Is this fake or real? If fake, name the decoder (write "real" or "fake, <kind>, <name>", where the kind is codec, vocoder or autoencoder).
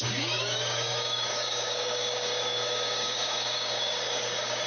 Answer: fake, codec, DAC